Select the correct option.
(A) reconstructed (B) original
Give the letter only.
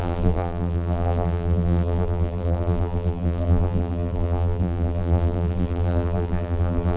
A